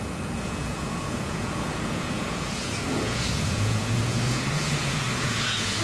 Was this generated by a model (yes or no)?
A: yes